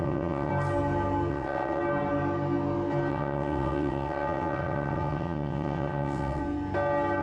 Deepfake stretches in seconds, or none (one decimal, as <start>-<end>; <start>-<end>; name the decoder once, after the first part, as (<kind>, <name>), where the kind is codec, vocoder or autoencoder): 0.0-0.5 (vocoder, WaveNeXt); 1.3-1.8; 3.1-6.4